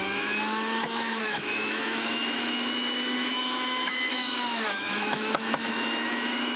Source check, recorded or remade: remade